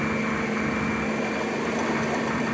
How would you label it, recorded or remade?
recorded